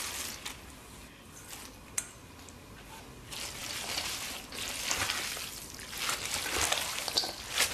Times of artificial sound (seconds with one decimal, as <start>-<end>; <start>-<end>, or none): none